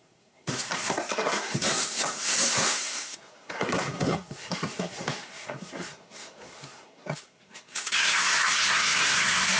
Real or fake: fake